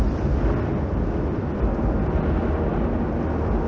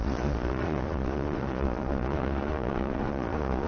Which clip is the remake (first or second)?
second